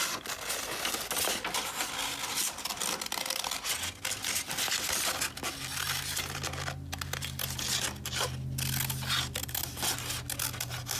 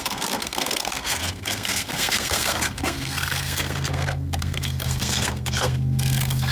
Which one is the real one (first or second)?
first